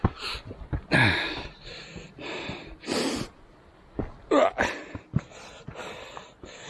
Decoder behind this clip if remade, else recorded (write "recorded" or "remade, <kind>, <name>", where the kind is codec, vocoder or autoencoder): recorded